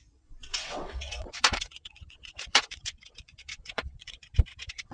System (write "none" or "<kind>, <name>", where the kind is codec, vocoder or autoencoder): vocoder, WaveNeXt